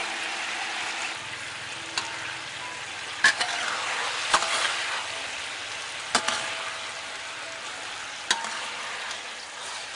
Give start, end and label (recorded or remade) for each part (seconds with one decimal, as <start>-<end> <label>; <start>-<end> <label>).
0.0-10.0 recorded